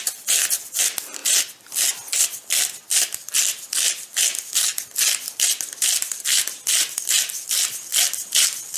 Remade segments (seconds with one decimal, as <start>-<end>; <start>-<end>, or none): 7.9-8.8